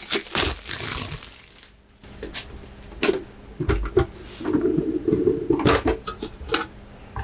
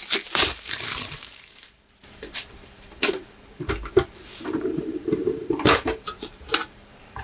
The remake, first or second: second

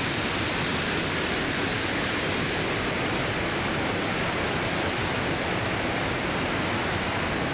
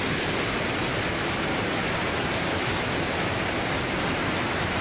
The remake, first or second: second